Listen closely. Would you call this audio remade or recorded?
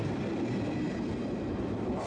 recorded